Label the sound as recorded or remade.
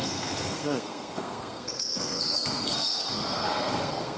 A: remade